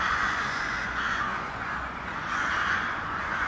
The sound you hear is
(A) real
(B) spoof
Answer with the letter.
B